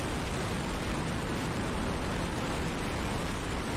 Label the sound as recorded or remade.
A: recorded